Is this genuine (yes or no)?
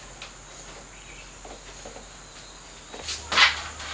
yes